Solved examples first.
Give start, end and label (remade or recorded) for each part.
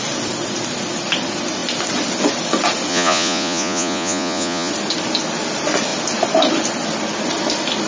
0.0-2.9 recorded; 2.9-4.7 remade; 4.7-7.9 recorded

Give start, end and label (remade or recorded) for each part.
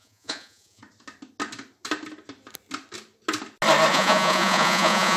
0.0-0.8 remade; 0.8-3.9 recorded; 3.9-5.2 remade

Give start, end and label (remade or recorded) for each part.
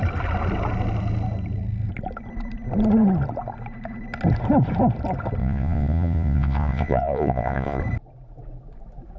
0.0-5.4 recorded; 5.4-7.8 remade; 7.8-9.2 recorded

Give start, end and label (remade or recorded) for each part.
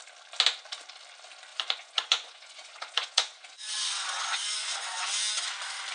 0.0-1.5 recorded; 1.5-5.0 remade; 5.0-5.9 recorded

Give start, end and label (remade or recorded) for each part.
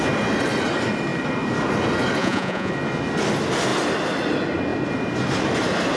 0.0-2.2 recorded; 2.2-2.7 remade; 2.7-6.0 recorded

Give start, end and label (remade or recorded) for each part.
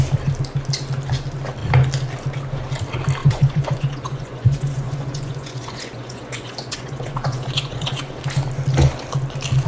0.0-3.2 recorded; 3.2-8.2 remade; 8.2-9.7 recorded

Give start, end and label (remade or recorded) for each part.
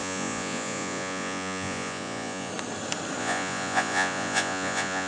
0.0-2.5 remade; 2.5-3.2 recorded; 3.2-5.1 remade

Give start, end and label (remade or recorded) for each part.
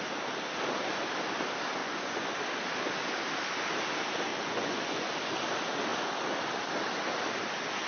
0.0-1.8 recorded; 1.8-2.3 remade; 2.3-4.3 recorded; 4.3-5.1 remade; 5.1-7.9 recorded